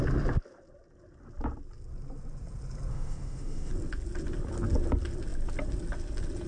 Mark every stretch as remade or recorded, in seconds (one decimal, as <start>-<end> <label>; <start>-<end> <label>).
0.0-2.9 recorded; 2.9-3.7 remade; 3.7-6.5 recorded